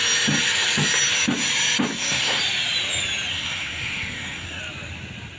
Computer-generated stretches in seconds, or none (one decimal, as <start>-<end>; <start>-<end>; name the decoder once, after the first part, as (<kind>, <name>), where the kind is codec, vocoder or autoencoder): 1.9-2.4 (codec, SNAC); 3.3-4.6